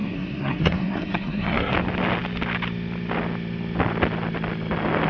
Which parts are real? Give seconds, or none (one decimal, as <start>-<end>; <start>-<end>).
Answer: 1.7-5.1